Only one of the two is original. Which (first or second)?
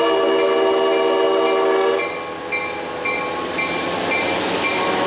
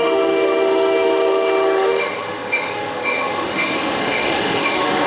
first